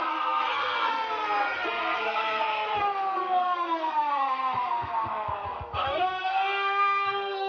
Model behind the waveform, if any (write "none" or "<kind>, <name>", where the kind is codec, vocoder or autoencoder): codec, SNAC